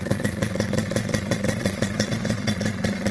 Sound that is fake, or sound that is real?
fake